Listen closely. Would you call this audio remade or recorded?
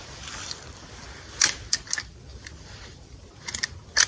recorded